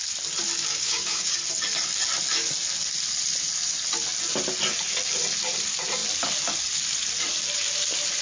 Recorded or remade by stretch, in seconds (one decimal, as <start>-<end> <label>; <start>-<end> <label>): 0.0-0.7 recorded; 0.7-1.4 remade; 1.4-8.2 recorded